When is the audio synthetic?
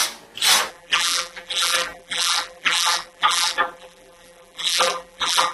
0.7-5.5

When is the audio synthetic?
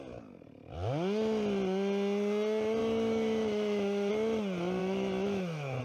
2.8-4.1; 4.8-5.8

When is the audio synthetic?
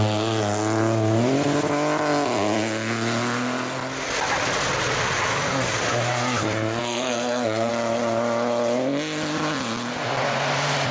6.8-7.7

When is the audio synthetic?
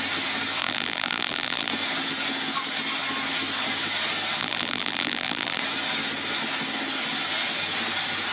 0.6-1.7; 4.4-5.6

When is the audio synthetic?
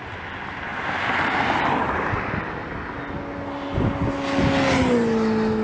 none